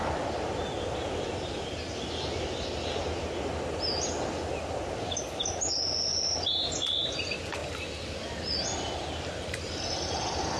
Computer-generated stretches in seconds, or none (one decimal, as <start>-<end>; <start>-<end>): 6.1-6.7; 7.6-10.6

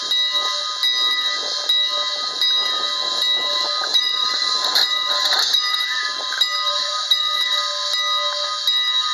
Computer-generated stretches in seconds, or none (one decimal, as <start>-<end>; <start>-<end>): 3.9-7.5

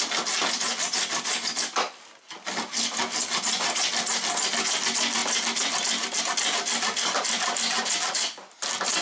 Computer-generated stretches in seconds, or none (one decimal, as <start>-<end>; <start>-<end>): none

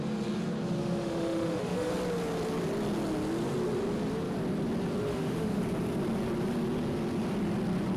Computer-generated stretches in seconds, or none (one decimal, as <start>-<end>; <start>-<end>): 0.8-1.9; 5.1-5.6

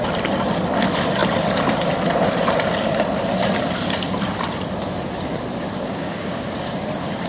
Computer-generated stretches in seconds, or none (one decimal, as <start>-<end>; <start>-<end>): 5.9-6.4

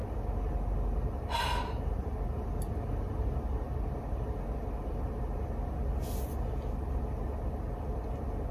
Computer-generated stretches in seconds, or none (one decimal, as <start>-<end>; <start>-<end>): none

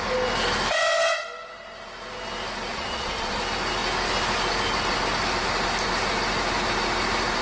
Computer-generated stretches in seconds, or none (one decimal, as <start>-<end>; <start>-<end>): 2.7-3.4